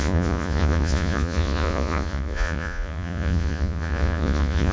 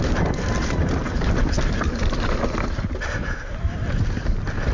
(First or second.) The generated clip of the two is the first